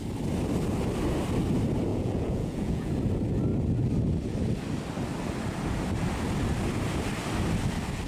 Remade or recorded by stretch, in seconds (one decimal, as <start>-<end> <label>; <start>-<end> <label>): 0.0-1.9 recorded; 1.9-2.9 remade; 2.9-8.1 recorded